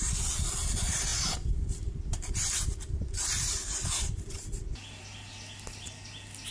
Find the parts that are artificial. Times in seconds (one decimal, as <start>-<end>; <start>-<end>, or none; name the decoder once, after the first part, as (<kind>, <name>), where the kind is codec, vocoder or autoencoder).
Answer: 1.1-5.0 (vocoder, BigVGAN v2)